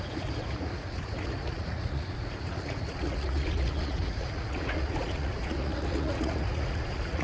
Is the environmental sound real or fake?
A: fake